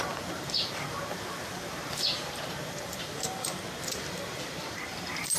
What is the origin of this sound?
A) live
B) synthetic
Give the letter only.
B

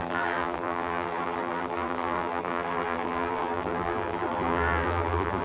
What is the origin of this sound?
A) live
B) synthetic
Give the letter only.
B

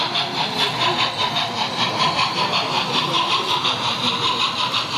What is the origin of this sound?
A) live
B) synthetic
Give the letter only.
A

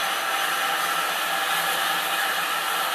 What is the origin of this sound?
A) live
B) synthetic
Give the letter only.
A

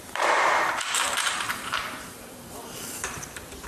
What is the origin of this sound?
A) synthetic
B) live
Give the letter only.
A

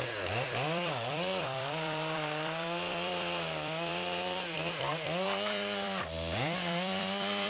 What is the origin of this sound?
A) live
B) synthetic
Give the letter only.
B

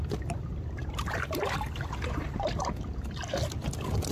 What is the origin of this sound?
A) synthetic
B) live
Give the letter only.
B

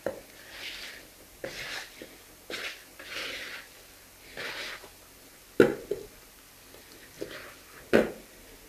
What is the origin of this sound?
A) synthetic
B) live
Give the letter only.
B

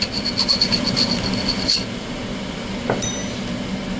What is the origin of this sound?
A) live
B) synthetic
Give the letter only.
A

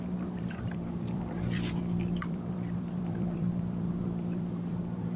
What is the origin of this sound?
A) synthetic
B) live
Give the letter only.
A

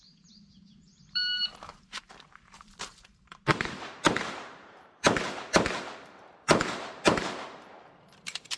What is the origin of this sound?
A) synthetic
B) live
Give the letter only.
A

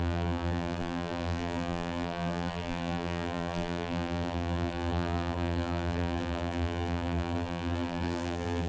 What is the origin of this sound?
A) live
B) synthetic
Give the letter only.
B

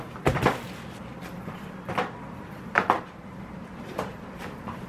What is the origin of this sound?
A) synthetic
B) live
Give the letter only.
A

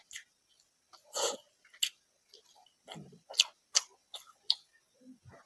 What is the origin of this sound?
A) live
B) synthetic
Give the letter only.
A